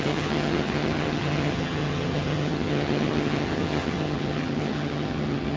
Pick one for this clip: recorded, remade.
remade